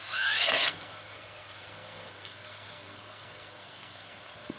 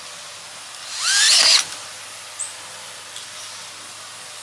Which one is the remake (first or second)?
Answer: first